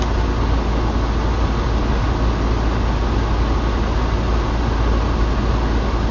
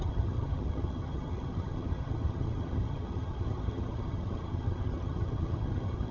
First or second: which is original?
first